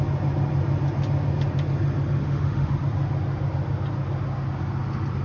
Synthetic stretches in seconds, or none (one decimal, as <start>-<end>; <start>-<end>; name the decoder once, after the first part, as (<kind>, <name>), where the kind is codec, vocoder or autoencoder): 2.2-2.7 (autoencoder, DAC-VAE)